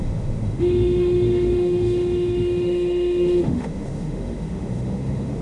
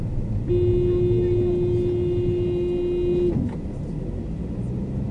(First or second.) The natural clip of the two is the second